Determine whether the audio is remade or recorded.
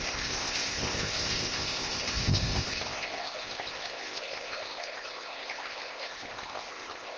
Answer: remade